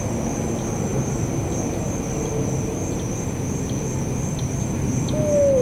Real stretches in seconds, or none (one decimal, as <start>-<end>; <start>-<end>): 0.0-0.9; 2.0-5.6